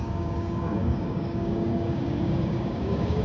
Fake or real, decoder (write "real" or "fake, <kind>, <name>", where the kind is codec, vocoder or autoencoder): fake, codec, DAC